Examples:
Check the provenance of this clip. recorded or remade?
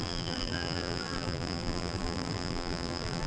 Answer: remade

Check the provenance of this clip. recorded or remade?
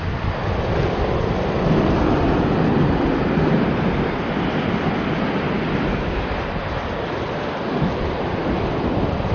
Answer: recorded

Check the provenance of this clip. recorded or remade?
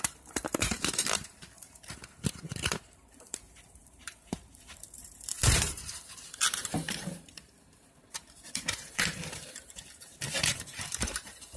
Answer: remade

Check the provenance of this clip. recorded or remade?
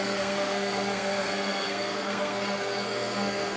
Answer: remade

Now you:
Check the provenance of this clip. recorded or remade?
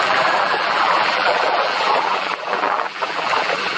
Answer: remade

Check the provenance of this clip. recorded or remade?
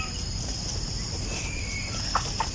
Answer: recorded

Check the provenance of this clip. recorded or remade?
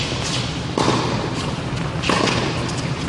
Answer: recorded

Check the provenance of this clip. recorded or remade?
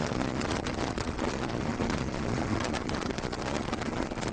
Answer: remade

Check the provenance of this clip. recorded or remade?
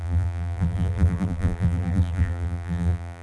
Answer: remade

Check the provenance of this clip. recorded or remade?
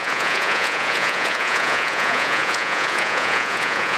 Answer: remade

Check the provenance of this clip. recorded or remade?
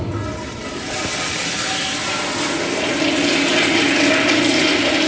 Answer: recorded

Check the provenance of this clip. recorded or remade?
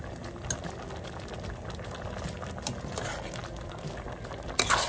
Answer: recorded